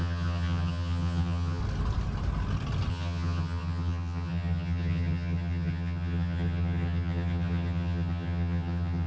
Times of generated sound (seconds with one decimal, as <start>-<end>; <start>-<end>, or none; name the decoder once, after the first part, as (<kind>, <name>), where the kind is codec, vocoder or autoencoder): 0.0-1.6 (vocoder, HiFi-GAN); 2.9-9.1